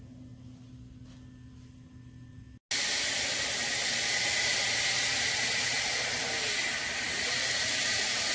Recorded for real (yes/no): yes